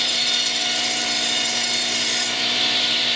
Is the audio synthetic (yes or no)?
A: yes